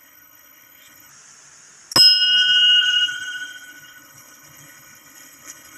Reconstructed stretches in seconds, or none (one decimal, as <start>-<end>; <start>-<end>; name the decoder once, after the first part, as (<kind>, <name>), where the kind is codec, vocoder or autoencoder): 0.0-1.1 (codec, HILCodec); 2.8-5.8

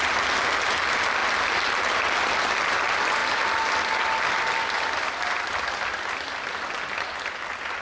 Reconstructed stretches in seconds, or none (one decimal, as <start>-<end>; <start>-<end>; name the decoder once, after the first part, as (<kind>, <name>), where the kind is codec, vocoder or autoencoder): none

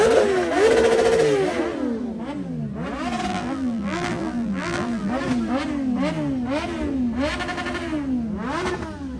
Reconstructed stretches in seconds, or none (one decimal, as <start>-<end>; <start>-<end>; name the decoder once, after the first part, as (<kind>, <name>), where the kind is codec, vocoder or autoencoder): 3.3-5.1 (vocoder, BigVGAN v2)

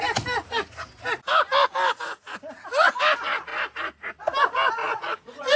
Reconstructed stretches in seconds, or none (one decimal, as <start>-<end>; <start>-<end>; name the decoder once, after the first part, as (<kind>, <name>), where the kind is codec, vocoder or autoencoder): 4.8-5.6 (vocoder, Vocos)

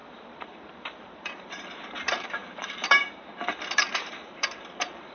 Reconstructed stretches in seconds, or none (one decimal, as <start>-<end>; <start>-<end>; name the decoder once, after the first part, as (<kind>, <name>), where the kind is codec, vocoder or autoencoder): 0.0-5.1 (vocoder, BigVGAN v2)